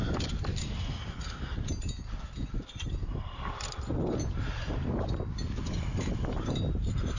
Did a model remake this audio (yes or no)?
no